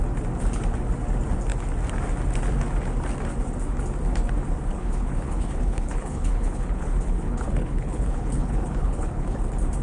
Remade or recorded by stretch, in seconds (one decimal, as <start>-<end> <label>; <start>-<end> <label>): 0.0-4.7 recorded; 4.7-9.4 remade; 9.4-9.8 recorded